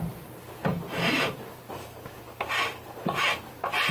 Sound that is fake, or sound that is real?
fake